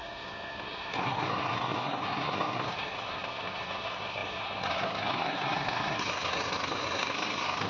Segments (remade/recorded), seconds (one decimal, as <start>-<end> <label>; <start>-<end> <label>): 0.0-7.7 remade